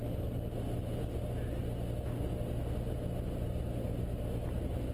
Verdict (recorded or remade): recorded